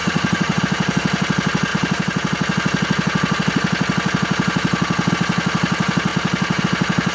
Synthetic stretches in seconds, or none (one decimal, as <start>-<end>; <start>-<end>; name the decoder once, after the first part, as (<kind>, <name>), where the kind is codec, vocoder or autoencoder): 0.0-0.6 (vocoder, Vocos)